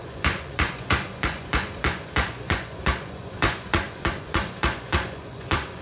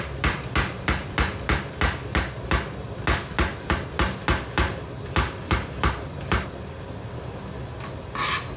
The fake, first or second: first